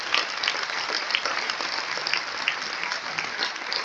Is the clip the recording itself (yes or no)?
yes